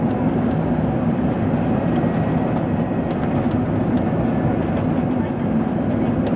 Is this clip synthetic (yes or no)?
no